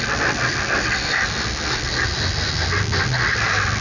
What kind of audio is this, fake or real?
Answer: real